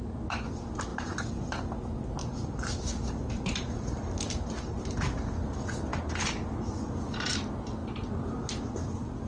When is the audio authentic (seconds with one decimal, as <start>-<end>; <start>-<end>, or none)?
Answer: 0.0-0.9; 1.8-2.2; 5.2-9.3